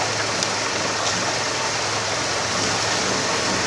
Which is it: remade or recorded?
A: recorded